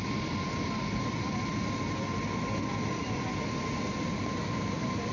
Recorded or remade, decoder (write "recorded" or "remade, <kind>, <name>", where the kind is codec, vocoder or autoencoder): recorded